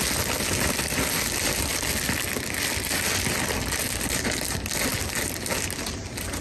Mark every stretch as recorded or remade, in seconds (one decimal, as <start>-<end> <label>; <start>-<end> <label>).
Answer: 0.0-6.4 recorded